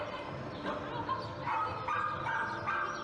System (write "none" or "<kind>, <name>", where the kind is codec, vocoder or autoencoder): none